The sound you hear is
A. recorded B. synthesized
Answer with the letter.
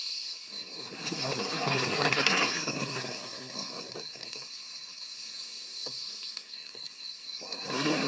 B